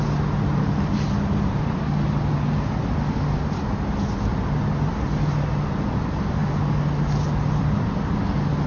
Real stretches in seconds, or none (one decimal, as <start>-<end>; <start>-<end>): 0.0-8.7